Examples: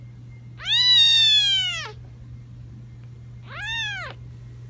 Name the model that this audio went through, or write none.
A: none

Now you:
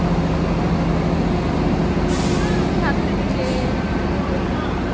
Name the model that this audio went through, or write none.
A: none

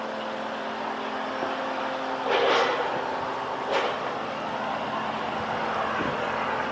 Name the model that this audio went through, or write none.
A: none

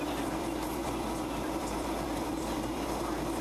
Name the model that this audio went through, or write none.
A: vocoder, BigVGAN v2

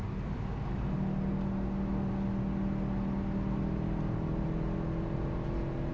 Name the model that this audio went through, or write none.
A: none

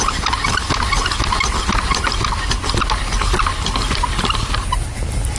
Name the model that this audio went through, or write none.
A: none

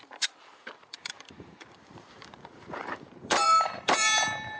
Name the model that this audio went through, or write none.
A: vocoder, BigVGAN v2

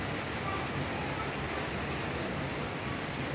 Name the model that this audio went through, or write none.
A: none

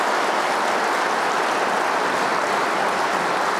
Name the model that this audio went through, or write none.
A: none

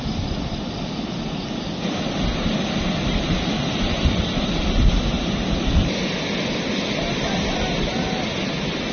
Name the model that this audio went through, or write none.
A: none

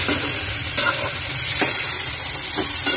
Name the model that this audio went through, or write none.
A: none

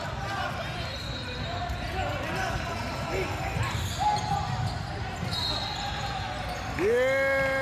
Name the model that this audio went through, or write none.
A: none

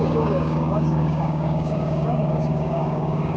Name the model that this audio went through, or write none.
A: codec, DAC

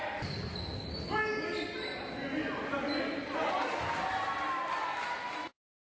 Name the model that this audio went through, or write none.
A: none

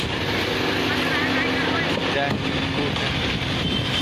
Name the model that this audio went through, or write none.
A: none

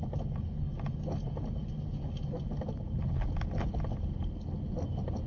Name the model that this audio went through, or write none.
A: none